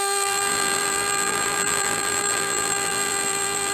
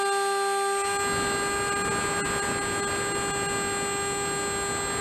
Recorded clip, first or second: second